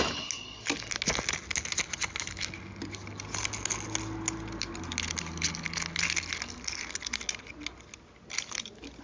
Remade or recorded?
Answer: recorded